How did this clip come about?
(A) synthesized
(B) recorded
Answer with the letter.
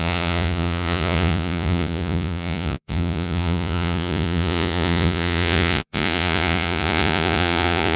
A